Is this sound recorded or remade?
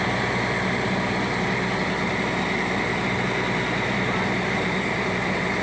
recorded